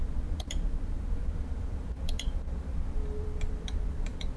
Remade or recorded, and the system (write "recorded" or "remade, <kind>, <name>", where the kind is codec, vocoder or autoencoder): remade, vocoder, BigVGAN v2